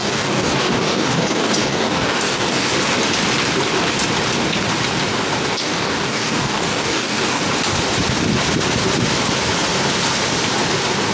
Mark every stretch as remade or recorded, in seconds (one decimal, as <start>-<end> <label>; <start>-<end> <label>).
0.0-2.7 remade; 2.7-5.5 recorded; 5.5-7.4 remade; 7.4-11.1 recorded

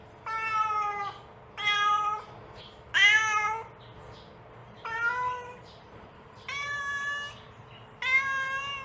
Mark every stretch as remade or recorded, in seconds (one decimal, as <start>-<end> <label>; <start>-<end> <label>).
0.0-4.6 recorded; 4.6-6.8 remade; 6.8-8.8 recorded

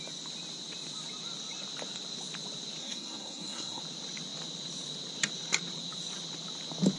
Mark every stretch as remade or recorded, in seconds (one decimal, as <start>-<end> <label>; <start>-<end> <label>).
0.0-2.8 recorded; 2.8-3.8 remade; 3.8-7.0 recorded

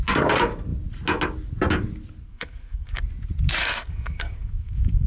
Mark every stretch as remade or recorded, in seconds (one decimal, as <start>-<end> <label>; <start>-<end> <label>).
0.0-2.2 recorded; 2.2-3.0 remade; 3.0-3.6 recorded; 3.6-5.1 remade

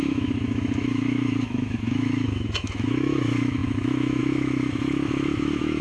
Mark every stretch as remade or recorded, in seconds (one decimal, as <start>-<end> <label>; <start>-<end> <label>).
0.0-5.8 remade

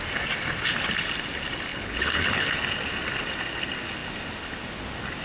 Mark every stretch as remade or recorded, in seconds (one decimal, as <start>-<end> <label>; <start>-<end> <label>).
0.0-1.7 recorded; 1.7-2.5 remade; 2.5-5.2 recorded

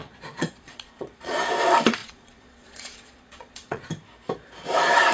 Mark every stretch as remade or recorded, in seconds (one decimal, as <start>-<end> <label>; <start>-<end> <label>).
0.0-1.4 remade; 1.4-2.0 recorded; 2.0-3.9 remade; 3.9-5.1 recorded

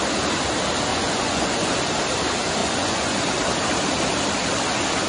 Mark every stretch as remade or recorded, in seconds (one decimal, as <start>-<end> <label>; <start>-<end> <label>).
0.0-0.9 recorded; 0.9-1.7 remade; 1.7-2.6 recorded; 2.6-3.2 remade; 3.2-5.1 recorded